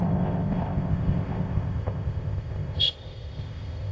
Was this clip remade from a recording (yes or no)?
yes